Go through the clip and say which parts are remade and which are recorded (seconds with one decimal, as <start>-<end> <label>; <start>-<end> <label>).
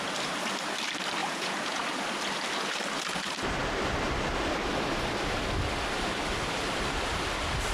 0.0-1.2 recorded; 1.2-1.8 remade; 1.8-7.7 recorded